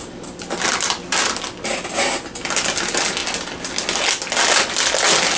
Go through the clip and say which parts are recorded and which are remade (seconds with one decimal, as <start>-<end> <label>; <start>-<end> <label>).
0.0-5.4 recorded